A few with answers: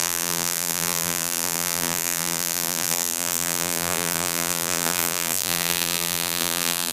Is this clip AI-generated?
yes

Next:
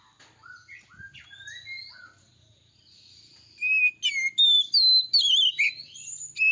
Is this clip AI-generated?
no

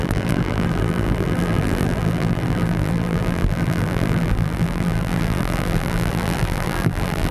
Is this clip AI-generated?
yes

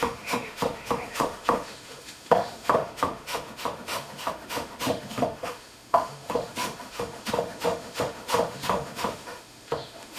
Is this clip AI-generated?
yes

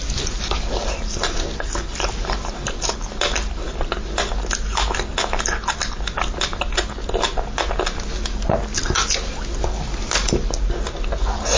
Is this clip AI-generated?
no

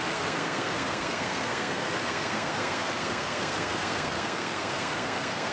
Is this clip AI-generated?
yes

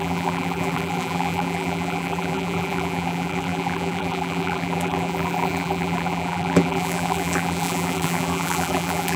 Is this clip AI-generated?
yes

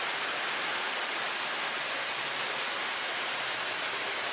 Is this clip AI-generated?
no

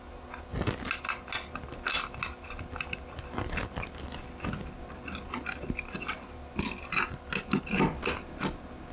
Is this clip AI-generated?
no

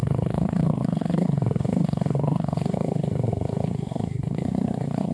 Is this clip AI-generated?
yes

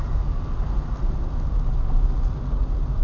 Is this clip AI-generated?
no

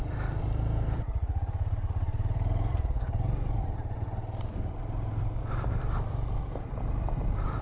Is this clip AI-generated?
yes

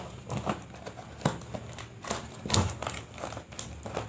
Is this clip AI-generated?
no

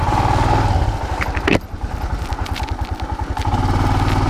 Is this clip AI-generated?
no